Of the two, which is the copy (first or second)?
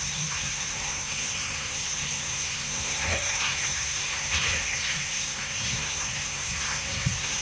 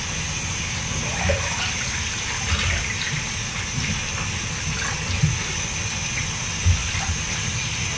first